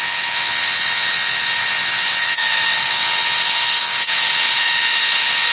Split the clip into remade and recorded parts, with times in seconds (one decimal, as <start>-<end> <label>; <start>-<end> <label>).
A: 0.0-5.5 remade